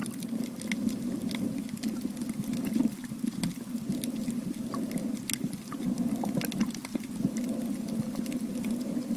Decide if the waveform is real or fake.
real